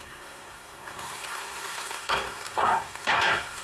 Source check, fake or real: fake